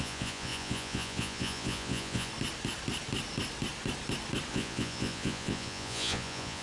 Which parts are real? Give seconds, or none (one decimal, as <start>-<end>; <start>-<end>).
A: 2.3-4.5